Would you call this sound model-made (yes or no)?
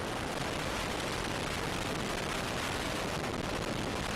no